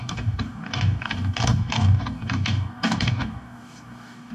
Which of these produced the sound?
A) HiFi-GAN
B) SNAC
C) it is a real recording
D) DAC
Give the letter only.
D